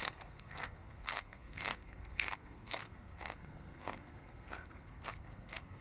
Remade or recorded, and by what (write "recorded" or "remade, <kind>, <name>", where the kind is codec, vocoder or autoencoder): remade, codec, SNAC